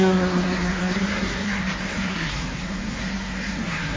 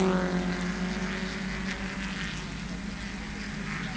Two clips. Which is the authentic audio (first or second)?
second